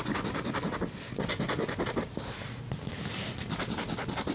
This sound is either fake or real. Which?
real